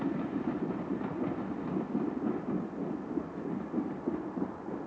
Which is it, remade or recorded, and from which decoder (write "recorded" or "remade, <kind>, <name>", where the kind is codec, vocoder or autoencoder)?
recorded